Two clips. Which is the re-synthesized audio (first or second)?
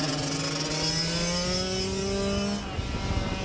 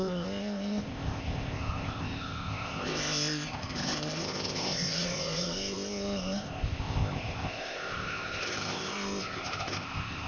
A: second